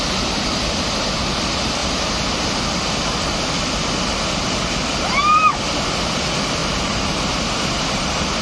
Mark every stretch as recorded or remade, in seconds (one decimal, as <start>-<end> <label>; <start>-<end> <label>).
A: 0.0-6.6 recorded; 6.6-8.4 remade